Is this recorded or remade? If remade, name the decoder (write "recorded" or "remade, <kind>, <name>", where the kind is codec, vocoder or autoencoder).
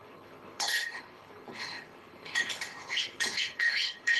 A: remade, codec, HILCodec